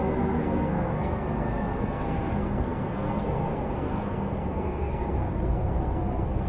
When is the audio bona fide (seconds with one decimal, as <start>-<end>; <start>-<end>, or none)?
none